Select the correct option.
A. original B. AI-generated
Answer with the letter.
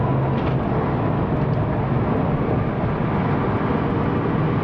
A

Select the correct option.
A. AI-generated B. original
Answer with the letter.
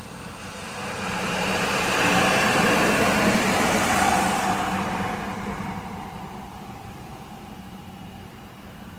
A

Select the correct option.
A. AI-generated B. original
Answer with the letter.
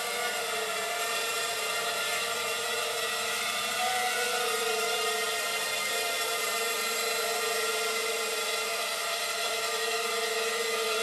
A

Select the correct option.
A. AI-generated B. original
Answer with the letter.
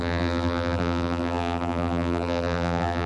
A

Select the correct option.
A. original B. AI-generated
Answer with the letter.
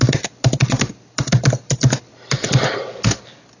A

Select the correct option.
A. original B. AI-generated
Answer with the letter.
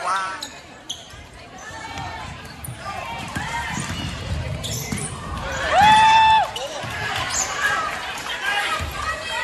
B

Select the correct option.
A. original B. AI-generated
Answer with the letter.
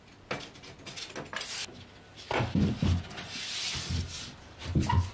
A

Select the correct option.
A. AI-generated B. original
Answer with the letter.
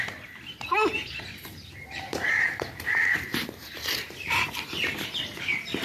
A